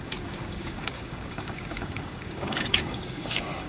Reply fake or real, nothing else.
fake